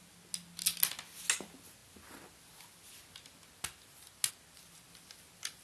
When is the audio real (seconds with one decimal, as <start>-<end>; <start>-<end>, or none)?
0.0-5.6

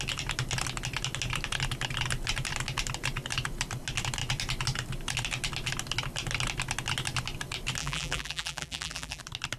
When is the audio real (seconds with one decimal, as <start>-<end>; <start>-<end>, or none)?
0.0-7.8; 9.2-9.6